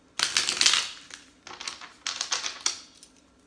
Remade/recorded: recorded